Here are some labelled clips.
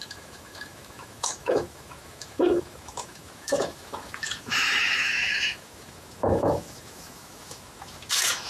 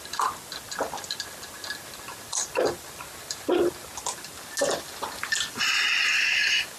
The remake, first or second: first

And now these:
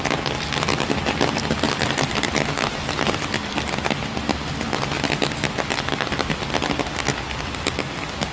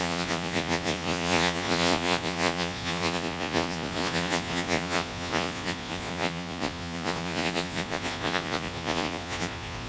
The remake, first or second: second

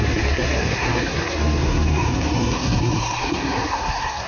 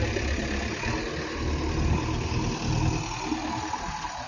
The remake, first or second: first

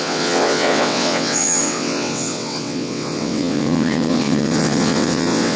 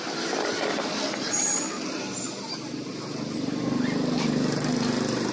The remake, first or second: first